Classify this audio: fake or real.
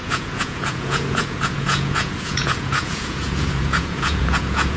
fake